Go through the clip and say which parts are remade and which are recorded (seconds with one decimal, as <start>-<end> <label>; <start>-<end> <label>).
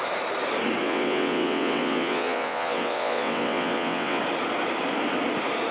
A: 0.0-0.8 recorded; 0.8-4.2 remade; 4.2-5.7 recorded